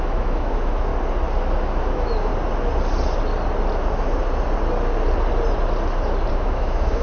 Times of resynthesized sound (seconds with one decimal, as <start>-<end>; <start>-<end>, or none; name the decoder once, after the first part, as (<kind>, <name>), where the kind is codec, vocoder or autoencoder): 0.0-0.9 (autoencoder, DAC-VAE); 1.8-2.3; 6.3-7.0